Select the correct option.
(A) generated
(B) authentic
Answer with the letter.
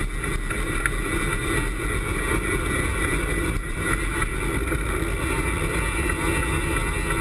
B